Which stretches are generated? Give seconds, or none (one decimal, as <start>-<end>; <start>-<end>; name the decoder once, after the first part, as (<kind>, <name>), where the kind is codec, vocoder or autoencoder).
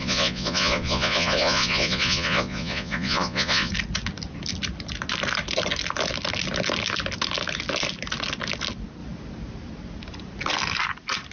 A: 0.0-3.7 (vocoder, Vocos)